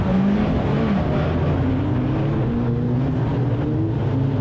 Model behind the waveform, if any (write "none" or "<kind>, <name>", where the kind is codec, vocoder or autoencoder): none